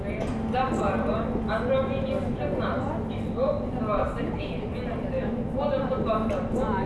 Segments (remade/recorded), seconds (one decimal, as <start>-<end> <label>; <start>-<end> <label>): 0.0-6.9 recorded